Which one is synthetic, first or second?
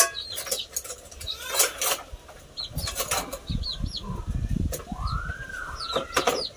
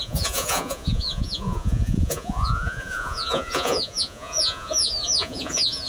second